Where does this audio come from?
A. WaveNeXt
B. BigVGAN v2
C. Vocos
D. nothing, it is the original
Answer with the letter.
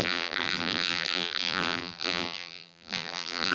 B